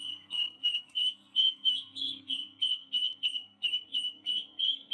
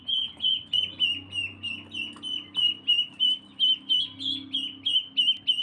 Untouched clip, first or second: second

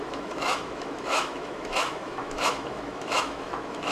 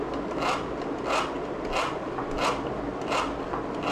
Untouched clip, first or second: second